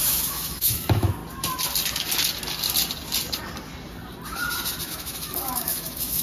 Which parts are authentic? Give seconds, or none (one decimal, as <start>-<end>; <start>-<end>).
1.2-4.9